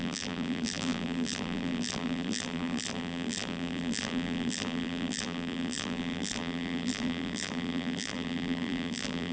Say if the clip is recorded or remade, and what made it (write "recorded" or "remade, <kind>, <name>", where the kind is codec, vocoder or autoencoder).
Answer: remade, vocoder, BigVGAN v2